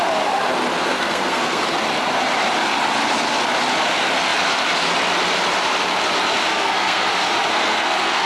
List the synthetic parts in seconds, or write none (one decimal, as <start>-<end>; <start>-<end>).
0.8-1.6; 6.5-7.1; 7.5-8.3